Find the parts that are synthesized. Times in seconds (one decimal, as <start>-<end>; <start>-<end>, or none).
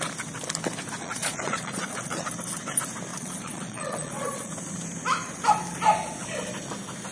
1.0-2.3; 3.1-4.5